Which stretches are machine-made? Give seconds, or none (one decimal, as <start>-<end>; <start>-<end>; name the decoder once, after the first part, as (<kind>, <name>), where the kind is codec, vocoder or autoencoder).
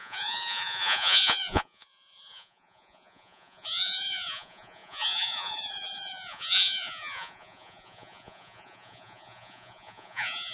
0.0-10.5 (vocoder, Vocos)